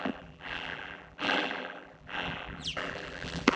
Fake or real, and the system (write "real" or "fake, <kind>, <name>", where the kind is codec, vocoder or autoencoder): fake, vocoder, BigVGAN v2